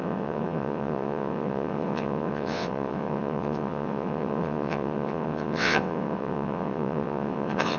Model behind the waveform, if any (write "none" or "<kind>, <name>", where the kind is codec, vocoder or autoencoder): vocoder, WaveNeXt